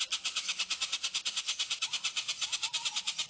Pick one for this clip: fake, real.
fake